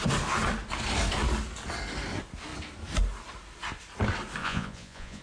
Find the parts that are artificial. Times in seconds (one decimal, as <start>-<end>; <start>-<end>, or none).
4.4-5.2